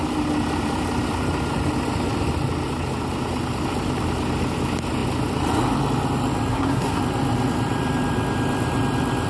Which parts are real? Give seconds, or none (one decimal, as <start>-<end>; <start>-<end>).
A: 0.0-6.5; 7.0-9.3